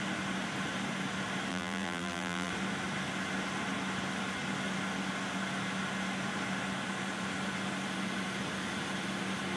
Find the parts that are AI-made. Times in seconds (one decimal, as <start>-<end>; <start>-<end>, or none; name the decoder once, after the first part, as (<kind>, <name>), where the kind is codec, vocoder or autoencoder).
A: 1.5-2.5 (vocoder, BigVGAN v2)